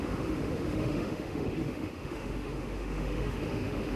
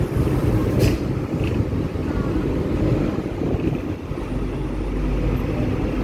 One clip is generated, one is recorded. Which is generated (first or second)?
first